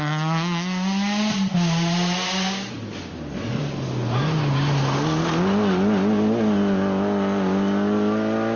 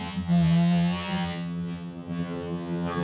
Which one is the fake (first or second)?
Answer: second